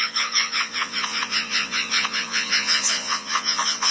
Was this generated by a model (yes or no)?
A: yes